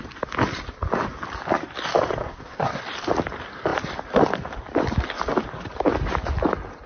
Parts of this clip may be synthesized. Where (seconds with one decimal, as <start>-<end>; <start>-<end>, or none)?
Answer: 2.2-2.8